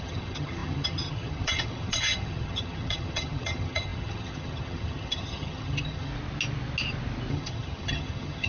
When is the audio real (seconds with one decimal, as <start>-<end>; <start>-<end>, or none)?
6.1-7.3